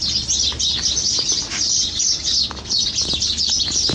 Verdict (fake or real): real